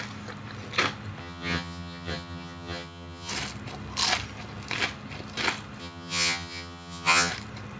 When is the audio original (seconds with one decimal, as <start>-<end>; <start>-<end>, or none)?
0.0-1.2; 3.3-5.8; 7.3-7.8